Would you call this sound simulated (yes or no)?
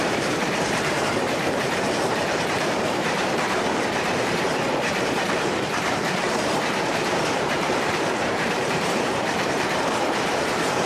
yes